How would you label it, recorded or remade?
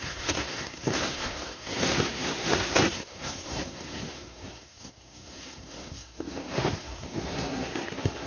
remade